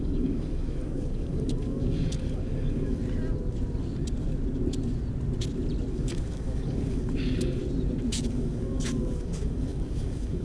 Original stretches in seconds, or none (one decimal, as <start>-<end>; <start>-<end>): 3.0-5.9; 7.6-8.1